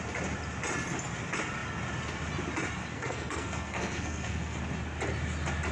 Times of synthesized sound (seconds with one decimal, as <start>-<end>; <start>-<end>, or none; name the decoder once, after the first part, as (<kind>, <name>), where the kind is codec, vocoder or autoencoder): 2.9-4.6 (codec, SNAC)